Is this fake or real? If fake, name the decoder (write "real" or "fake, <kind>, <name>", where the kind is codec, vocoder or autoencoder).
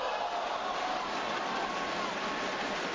real